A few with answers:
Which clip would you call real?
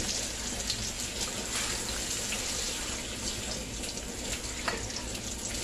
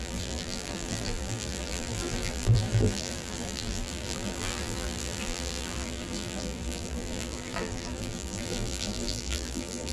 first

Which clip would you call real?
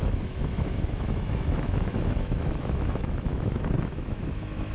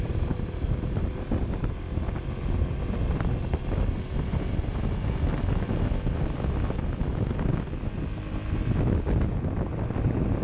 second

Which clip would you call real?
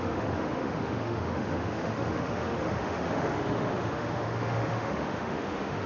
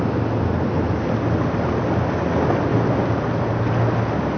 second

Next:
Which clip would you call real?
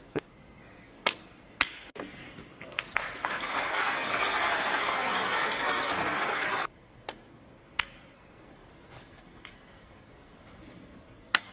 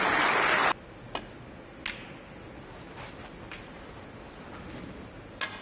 second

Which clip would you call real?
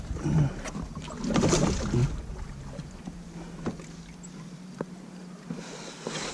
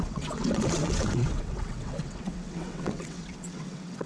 first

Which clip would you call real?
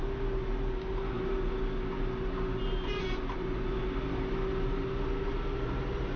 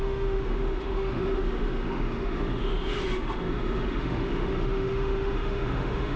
first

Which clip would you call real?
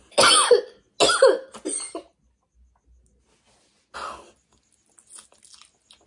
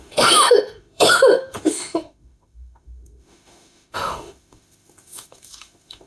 first